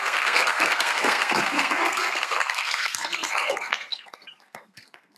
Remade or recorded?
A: remade